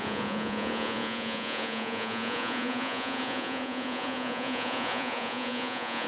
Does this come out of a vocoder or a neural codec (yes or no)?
yes